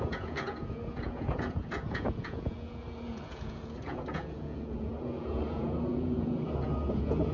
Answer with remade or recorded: remade